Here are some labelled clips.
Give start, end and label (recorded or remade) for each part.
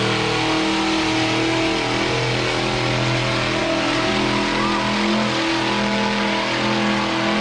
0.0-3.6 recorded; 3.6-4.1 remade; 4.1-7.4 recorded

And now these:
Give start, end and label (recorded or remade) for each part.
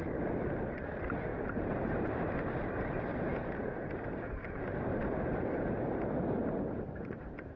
0.0-1.3 recorded; 1.3-3.0 remade; 3.0-4.9 recorded; 4.9-5.8 remade; 5.8-6.4 recorded; 6.4-7.6 remade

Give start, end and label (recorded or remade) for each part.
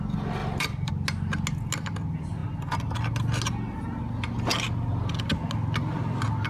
0.0-0.4 recorded; 0.4-0.9 remade; 0.9-6.5 recorded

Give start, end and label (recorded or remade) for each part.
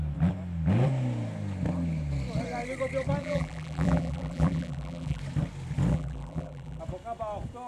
0.0-3.2 recorded; 3.2-5.2 remade; 5.2-5.9 recorded; 5.9-6.8 remade; 6.8-7.7 recorded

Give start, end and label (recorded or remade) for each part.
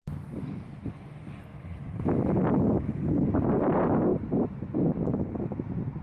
0.0-4.1 recorded; 4.1-4.7 remade; 4.7-6.0 recorded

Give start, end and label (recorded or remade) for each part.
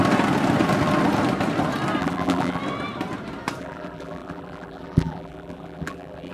0.0-2.0 recorded; 2.0-2.6 remade; 2.6-3.6 recorded; 3.6-6.3 remade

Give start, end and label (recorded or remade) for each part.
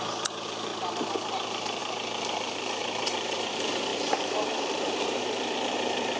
0.0-0.7 remade; 0.7-1.3 recorded; 1.3-6.2 remade